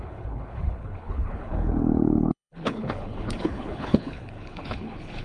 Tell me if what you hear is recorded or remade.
remade